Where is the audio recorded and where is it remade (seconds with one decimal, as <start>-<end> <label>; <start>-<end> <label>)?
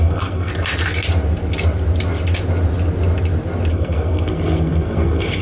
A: 0.0-0.5 remade; 0.5-3.7 recorded; 3.7-5.4 remade